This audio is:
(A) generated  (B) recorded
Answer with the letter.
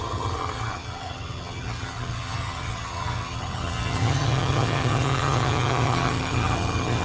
A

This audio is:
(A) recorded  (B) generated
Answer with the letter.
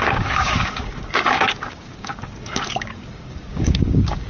B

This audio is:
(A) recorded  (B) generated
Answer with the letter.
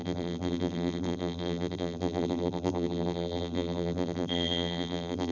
B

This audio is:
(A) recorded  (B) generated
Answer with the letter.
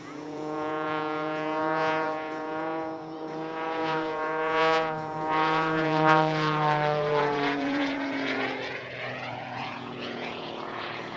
B